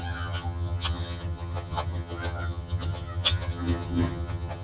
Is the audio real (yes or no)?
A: no